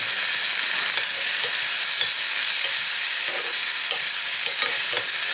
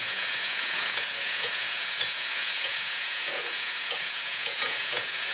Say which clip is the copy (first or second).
second